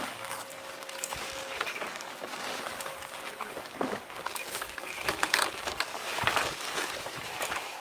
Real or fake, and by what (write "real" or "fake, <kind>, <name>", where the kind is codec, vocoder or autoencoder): fake, codec, DAC